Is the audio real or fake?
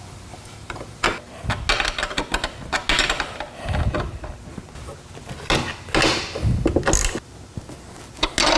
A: real